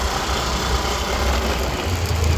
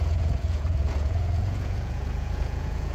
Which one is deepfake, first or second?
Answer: second